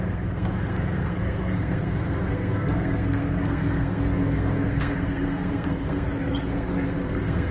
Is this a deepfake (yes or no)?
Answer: yes